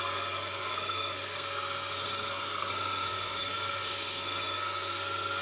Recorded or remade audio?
remade